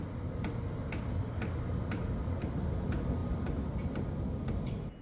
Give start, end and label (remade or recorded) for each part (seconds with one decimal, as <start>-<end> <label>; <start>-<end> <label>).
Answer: 0.0-5.0 recorded